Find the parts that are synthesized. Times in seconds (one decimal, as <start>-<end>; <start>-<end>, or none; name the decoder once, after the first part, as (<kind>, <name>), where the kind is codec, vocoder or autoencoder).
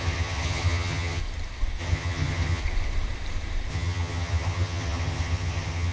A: 0.0-1.2 (vocoder, HiFi-GAN); 1.8-2.6; 3.7-5.9